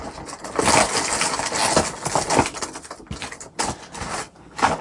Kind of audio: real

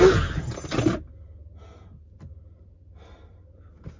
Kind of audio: real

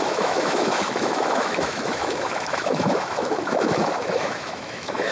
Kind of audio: fake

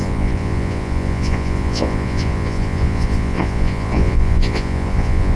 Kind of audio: fake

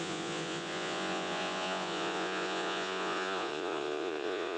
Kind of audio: fake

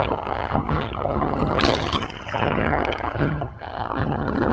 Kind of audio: fake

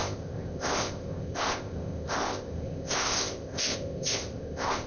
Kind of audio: fake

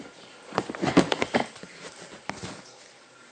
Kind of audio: real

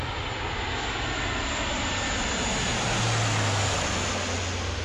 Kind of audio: real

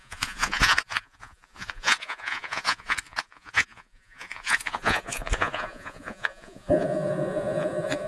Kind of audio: fake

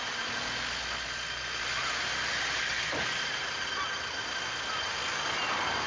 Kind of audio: real